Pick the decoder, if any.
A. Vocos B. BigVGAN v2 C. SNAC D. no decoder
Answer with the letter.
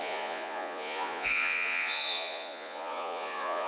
A